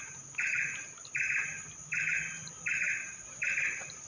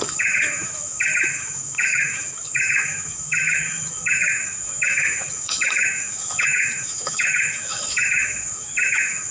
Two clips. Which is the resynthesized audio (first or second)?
second